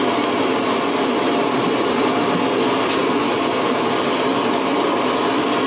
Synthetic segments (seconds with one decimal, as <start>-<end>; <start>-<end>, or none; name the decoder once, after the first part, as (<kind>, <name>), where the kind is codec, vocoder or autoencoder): none